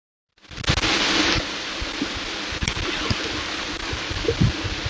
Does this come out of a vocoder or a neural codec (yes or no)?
no